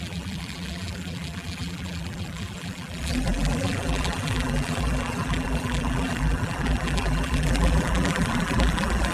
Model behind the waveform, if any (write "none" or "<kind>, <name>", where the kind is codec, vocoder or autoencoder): vocoder, BigVGAN v2